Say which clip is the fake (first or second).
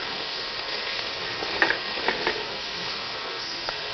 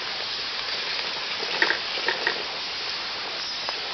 first